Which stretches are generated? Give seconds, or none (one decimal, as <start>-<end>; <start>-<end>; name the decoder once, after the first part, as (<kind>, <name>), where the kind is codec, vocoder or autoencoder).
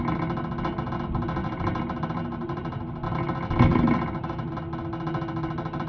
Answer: 1.4-2.9 (vocoder, BigVGAN v2); 3.7-4.6